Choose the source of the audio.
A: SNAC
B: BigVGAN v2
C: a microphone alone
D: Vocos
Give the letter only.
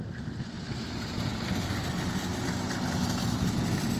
C